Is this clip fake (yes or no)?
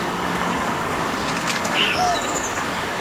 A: yes